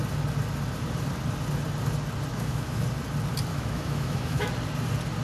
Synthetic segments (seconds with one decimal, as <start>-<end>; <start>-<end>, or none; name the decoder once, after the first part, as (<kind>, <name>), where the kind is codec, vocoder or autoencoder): 2.3-2.8 (autoencoder, DAC-VAE); 3.5-4.5

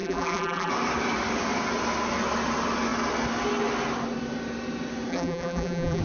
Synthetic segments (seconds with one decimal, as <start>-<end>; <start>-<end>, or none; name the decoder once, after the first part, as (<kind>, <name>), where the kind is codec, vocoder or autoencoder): 0.0-0.7 (vocoder, BigVGAN v2); 5.1-6.0